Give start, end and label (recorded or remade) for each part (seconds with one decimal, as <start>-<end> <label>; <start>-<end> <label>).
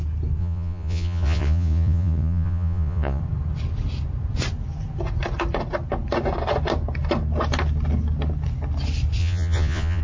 0.0-0.4 recorded; 0.4-3.2 remade; 3.2-9.2 recorded; 9.2-10.0 remade